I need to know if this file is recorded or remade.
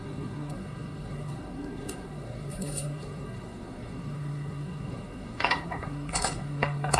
remade